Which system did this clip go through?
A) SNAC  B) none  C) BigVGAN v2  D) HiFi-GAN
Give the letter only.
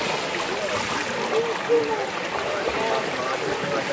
B